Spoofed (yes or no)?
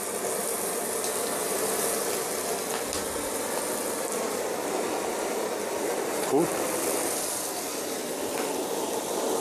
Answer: no